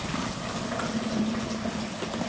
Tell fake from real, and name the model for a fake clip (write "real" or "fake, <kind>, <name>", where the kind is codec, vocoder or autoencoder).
real